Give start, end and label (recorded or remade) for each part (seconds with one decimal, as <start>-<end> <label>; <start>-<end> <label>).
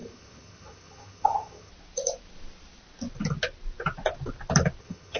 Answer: 0.0-1.7 remade; 1.7-4.8 recorded; 4.8-5.2 remade